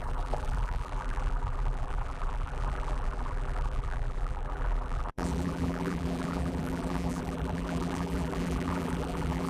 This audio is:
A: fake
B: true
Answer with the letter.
A